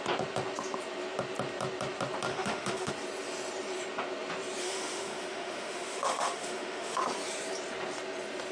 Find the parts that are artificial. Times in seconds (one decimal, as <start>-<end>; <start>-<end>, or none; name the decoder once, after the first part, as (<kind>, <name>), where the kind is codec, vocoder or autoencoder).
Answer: 2.3-2.9 (autoencoder, DAC-VAE); 4.6-7.0